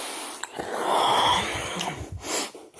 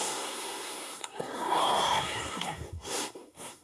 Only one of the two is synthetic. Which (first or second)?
second